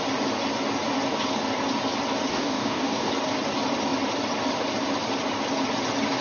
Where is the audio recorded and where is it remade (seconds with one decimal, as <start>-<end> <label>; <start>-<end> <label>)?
0.0-2.3 recorded; 2.3-3.1 remade; 3.1-6.2 recorded